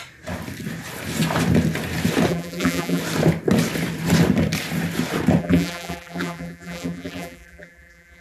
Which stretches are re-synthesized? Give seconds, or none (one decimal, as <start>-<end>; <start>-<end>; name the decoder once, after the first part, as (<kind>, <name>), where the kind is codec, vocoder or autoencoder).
2.3-3.0 (vocoder, BigVGAN v2); 5.4-8.2